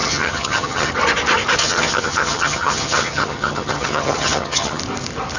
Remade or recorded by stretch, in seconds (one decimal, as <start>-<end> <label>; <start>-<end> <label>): 0.0-0.9 remade; 0.9-1.6 recorded; 1.6-4.8 remade; 4.8-5.4 recorded